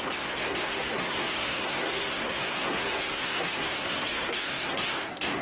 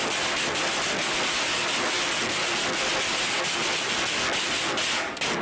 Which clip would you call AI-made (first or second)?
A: first